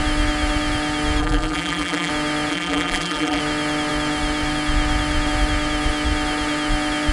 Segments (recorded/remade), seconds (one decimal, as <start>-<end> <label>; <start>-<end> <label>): 0.0-1.2 recorded; 1.2-2.1 remade; 2.1-2.5 recorded; 2.5-3.4 remade; 3.4-7.1 recorded